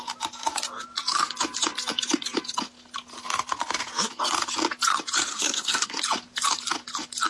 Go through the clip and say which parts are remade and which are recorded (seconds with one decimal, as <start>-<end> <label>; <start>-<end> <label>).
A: 0.0-5.3 recorded; 5.3-6.0 remade; 6.0-7.3 recorded